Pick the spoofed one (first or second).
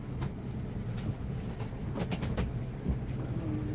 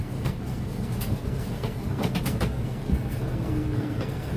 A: second